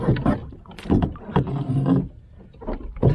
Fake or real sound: real